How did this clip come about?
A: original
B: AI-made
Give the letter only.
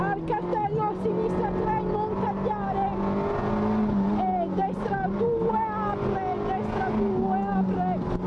A